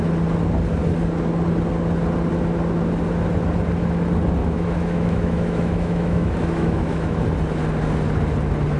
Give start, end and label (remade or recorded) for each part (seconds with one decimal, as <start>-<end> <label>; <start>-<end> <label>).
0.0-4.4 recorded; 4.4-7.2 remade; 7.2-8.8 recorded

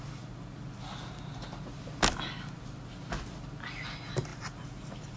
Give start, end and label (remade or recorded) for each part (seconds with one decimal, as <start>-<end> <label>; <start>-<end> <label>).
0.0-4.3 recorded; 4.3-5.2 remade

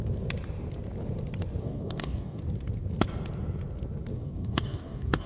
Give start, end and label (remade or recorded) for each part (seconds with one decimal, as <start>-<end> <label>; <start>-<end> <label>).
0.0-1.6 recorded; 1.6-2.4 remade; 2.4-4.1 recorded; 4.1-5.3 remade